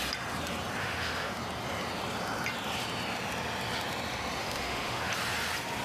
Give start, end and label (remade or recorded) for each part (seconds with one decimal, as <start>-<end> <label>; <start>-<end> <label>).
0.0-0.8 recorded; 0.8-1.3 remade; 1.3-4.4 recorded; 4.4-5.1 remade; 5.1-5.8 recorded